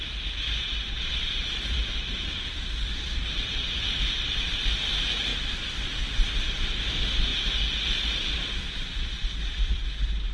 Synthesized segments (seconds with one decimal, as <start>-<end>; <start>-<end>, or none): 0.0-5.3; 6.3-7.3; 8.3-10.3